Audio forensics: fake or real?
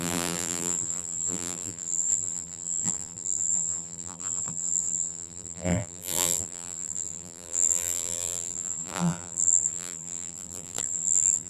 fake